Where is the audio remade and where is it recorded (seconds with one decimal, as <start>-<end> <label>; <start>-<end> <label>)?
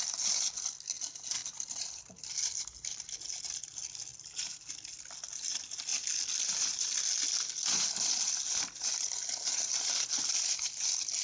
0.0-11.2 recorded